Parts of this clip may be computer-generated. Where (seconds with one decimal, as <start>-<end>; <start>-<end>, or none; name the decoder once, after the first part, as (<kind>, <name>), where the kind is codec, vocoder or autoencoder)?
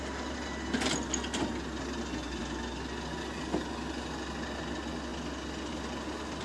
none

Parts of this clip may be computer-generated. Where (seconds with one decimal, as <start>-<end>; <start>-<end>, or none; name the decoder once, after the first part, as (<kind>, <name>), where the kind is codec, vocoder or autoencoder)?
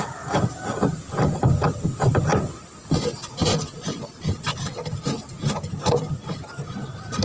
0.0-2.3 (vocoder, BigVGAN v2); 4.2-7.2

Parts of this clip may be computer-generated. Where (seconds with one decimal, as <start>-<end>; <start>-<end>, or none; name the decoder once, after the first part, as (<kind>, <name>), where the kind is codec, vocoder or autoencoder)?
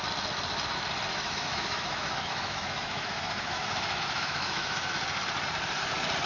1.1-4.9 (autoencoder, DAC-VAE)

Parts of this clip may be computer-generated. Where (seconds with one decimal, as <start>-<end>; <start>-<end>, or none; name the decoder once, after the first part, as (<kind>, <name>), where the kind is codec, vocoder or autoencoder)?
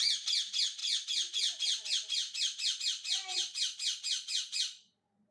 3.3-5.3 (vocoder, Vocos)